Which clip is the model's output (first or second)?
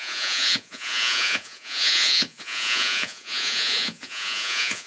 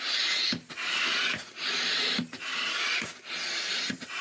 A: first